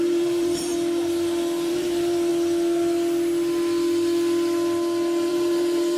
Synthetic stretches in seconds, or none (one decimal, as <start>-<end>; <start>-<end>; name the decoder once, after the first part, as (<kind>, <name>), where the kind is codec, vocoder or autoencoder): 0.0-0.7 (vocoder, BigVGAN v2); 1.7-2.3; 5.3-6.0